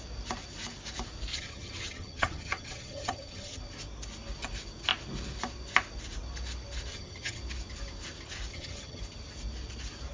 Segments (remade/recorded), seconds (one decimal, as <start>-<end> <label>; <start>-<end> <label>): 0.0-1.3 recorded; 1.3-3.6 remade; 3.6-6.9 recorded; 6.9-7.4 remade; 7.4-8.5 recorded; 8.5-9.0 remade; 9.0-10.1 recorded